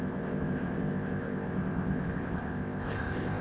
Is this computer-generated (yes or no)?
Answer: yes